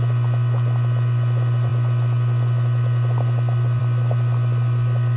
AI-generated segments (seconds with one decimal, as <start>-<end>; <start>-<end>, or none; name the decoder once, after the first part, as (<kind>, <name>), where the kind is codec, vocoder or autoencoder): none